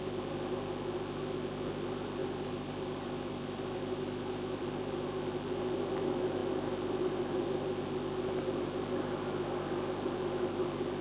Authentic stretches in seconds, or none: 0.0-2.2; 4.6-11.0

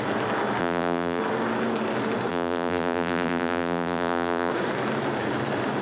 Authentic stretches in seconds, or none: 0.0-0.6; 1.2-2.3; 4.5-5.8

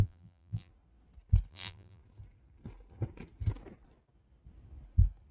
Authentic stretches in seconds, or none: 0.7-1.5; 2.0-5.3